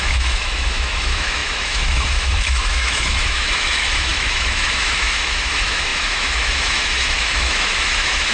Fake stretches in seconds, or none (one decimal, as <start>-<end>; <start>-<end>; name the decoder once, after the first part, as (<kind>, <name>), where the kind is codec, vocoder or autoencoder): 0.0-8.3 (autoencoder, DAC-VAE)